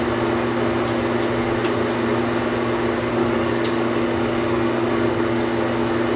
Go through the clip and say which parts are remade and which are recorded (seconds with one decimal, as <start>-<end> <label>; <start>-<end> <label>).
0.0-3.2 recorded; 3.2-5.2 remade; 5.2-6.2 recorded